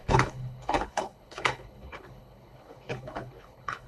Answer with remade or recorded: remade